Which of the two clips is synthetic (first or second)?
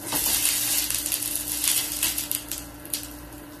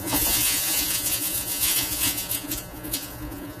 second